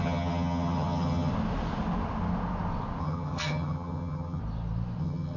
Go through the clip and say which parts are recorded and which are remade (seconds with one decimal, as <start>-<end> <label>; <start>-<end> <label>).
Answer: 0.0-1.3 remade; 1.3-3.0 recorded; 3.0-4.4 remade; 4.4-5.0 recorded; 5.0-5.4 remade